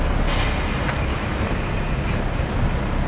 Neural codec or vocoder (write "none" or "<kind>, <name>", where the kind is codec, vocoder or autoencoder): none